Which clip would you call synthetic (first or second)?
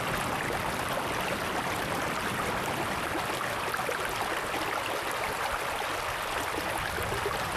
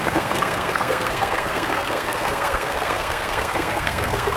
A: second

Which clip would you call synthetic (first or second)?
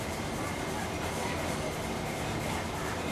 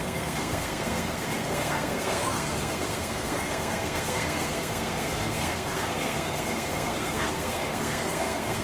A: second